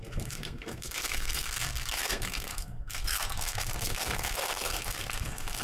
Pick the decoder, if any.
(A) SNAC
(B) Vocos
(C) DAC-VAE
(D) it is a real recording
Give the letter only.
A